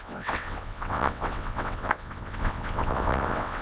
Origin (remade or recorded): remade